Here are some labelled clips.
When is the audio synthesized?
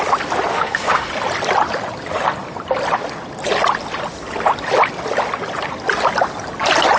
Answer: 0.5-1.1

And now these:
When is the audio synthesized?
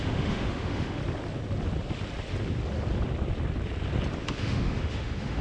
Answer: 0.0-1.0; 4.2-5.4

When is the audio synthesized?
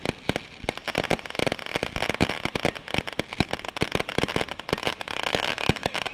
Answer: 4.8-6.1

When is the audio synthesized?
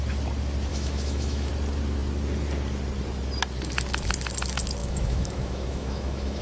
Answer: 0.7-1.5; 4.8-6.4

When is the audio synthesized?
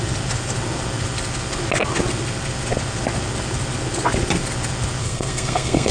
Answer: 5.0-5.9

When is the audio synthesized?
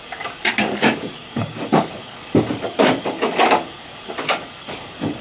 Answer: 0.0-5.2